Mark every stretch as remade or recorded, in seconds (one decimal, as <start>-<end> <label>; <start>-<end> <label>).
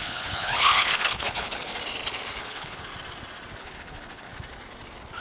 0.0-1.7 remade; 1.7-2.4 recorded; 2.4-2.9 remade; 2.9-3.6 recorded; 3.6-4.3 remade; 4.3-5.2 recorded